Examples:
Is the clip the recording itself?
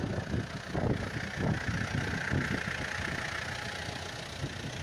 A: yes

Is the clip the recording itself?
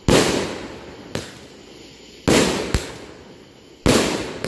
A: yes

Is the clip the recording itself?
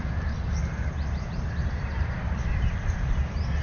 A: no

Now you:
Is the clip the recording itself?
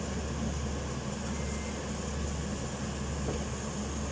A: yes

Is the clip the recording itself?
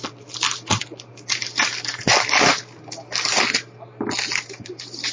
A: yes